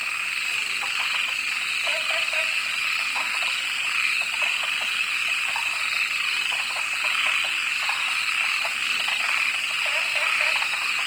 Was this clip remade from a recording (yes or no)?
no